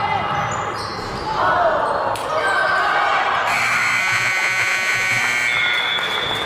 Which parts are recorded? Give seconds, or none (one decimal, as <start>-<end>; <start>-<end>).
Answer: 0.0-4.0; 5.2-6.5